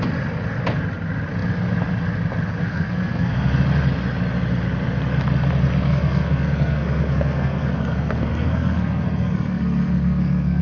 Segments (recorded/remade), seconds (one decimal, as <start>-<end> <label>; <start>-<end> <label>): 0.0-2.6 recorded; 2.6-3.6 remade; 3.6-5.8 recorded; 5.8-10.6 remade